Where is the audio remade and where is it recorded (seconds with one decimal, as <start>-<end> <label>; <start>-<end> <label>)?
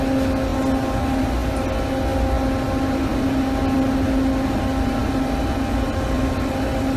0.0-7.0 recorded